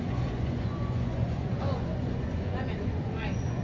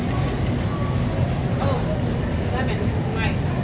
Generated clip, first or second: first